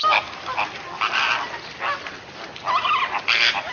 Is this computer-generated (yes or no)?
yes